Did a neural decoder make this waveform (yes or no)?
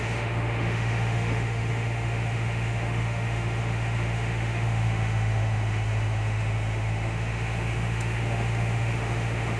yes